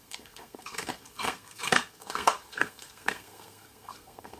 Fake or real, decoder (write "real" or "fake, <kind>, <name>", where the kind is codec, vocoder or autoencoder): fake, codec, SNAC